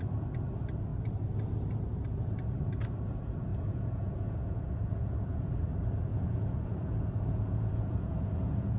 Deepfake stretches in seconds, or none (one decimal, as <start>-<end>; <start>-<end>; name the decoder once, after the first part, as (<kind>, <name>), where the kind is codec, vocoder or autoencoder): 3.5-5.5 (vocoder, Vocos); 6.1-8.8